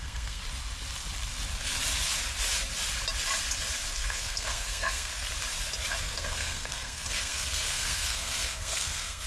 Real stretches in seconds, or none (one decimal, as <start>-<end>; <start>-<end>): 0.4-3.9; 5.1-6.0

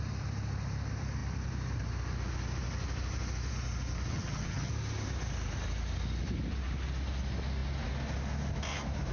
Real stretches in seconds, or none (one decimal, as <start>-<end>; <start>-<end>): 0.0-4.1; 4.7-9.1

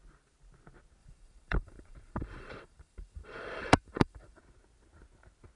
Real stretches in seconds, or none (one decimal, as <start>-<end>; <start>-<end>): 0.0-1.0; 4.4-5.6

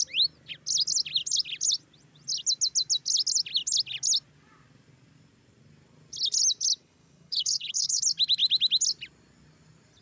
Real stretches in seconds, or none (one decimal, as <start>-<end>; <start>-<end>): 0.0-6.8; 8.0-10.0